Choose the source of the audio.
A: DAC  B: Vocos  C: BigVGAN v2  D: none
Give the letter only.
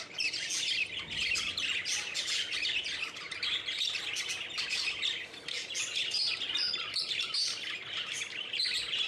D